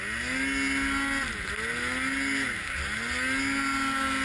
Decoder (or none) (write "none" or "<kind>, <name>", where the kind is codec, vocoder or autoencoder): none